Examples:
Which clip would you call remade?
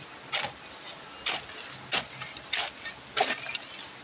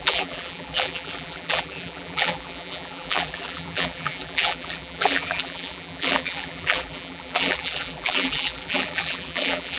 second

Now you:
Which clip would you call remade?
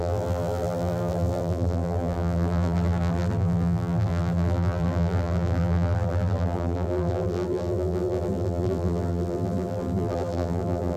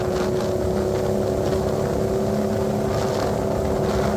first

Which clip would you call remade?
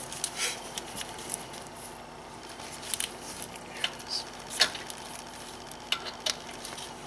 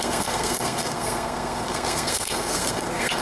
second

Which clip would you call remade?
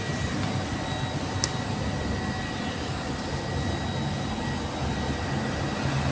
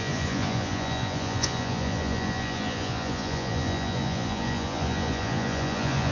second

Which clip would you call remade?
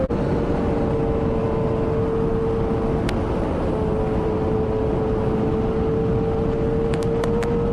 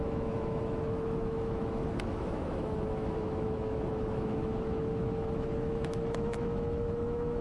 second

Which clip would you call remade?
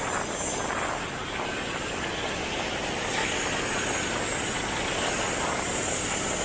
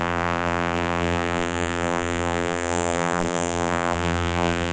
second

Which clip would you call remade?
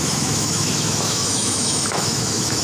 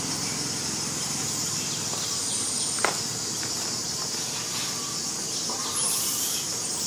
first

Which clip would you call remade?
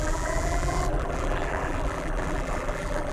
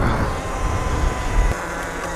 first